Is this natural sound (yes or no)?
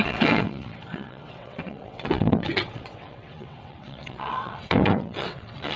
no